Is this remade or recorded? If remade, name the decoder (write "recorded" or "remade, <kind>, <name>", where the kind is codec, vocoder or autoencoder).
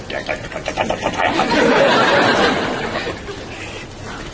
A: recorded